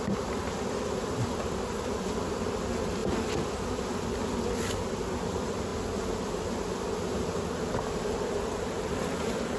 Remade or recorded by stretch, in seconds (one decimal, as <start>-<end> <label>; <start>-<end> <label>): 0.0-3.0 remade; 3.0-3.8 recorded; 3.8-5.7 remade; 5.7-7.7 recorded; 7.7-9.6 remade